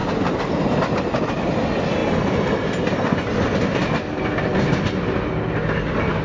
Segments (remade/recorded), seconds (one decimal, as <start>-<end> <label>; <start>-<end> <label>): 0.0-6.2 recorded